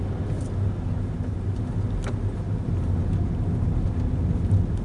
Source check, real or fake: real